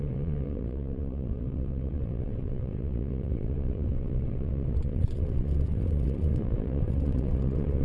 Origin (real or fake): fake